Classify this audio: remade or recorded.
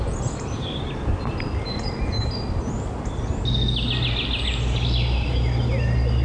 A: recorded